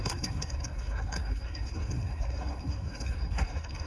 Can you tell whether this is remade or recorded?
remade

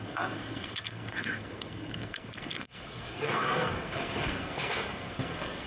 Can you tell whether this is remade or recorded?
remade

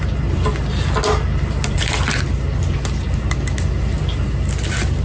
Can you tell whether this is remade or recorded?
recorded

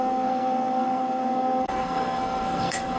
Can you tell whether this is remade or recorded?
remade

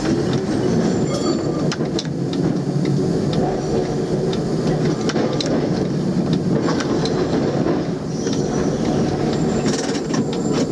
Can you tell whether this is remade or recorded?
recorded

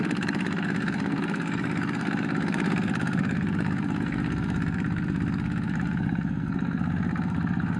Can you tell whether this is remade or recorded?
remade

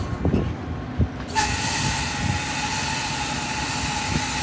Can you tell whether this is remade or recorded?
recorded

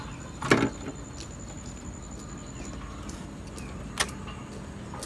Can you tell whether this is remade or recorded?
recorded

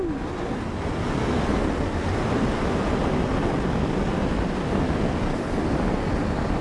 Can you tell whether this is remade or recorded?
recorded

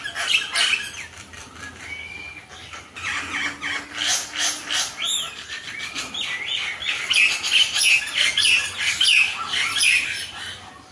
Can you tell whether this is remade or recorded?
recorded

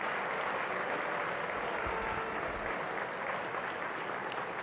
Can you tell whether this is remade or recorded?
recorded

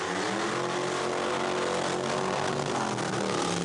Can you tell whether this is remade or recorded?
recorded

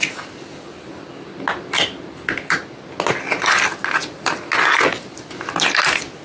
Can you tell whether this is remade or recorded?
recorded